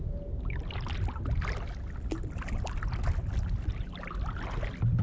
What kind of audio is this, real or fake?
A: real